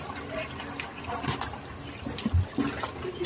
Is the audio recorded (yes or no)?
yes